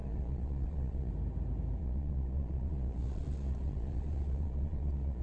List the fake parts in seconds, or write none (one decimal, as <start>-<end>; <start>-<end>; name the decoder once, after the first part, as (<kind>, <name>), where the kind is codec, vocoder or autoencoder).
0.0-1.1 (vocoder, Vocos); 1.8-5.2